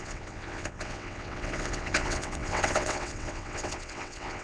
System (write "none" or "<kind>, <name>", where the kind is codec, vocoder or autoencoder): vocoder, WaveNeXt